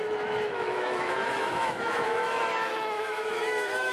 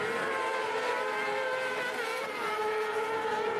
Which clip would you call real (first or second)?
second